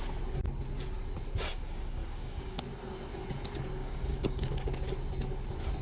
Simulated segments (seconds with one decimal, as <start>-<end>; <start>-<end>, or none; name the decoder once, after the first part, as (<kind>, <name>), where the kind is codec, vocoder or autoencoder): 1.5-2.6 (codec, DAC); 3.8-4.5